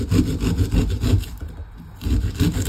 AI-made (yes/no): no